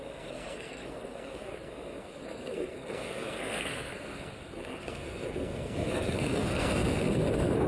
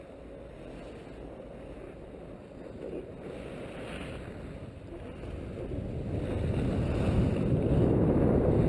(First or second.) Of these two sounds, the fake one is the first